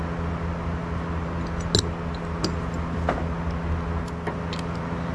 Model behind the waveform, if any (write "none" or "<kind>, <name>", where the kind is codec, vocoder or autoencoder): none